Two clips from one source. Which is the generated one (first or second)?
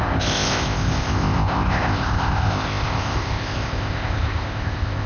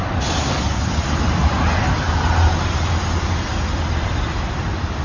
first